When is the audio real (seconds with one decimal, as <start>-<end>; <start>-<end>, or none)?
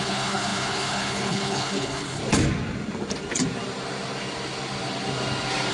2.2-5.7